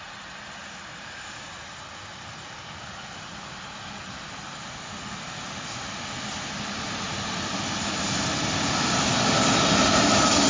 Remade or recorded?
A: recorded